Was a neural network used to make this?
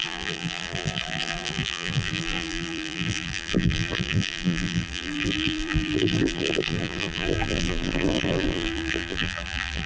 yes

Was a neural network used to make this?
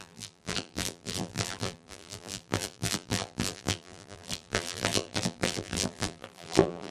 yes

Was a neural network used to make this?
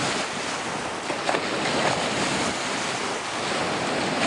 no